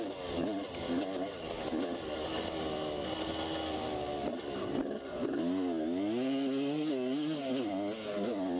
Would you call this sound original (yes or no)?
yes